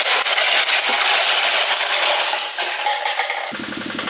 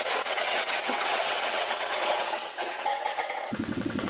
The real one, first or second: first